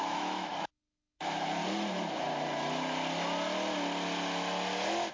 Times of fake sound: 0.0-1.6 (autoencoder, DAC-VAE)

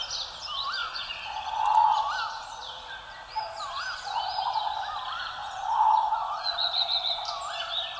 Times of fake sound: 0.8-2.0 (vocoder, Vocos); 2.6-3.4; 5.4-6.5

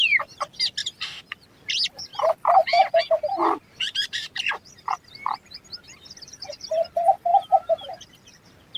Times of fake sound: 0.8-1.3 (vocoder, BigVGAN v2); 3.4-6.7; 7.3-7.9